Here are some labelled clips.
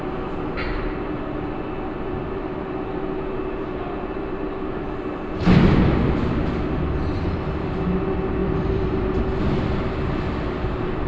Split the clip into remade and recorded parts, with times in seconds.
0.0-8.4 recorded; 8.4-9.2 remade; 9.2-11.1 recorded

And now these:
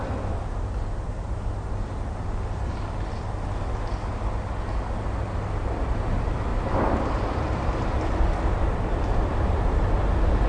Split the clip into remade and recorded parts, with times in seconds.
0.0-6.5 recorded; 6.5-9.0 remade; 9.0-10.5 recorded

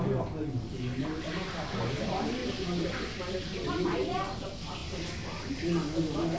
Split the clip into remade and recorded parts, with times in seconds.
0.0-6.4 recorded

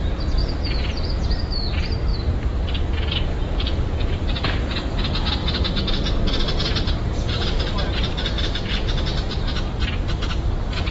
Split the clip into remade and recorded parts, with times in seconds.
0.0-0.4 recorded; 0.4-1.4 remade; 1.4-2.1 recorded; 2.1-2.9 remade; 2.9-5.4 recorded; 5.4-8.7 remade; 8.7-10.9 recorded